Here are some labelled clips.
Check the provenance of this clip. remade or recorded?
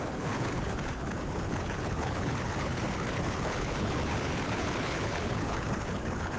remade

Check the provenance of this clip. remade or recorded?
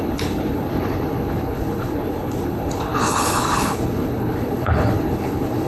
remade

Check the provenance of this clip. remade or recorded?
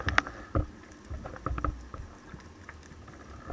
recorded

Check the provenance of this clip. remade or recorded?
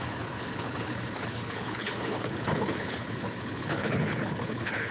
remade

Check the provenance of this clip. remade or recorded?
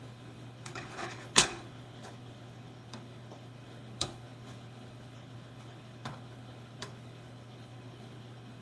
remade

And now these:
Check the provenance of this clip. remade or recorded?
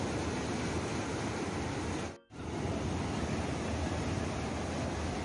recorded